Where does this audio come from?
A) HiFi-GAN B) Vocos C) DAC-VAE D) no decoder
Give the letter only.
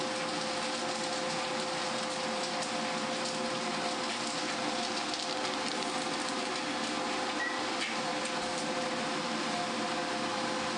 D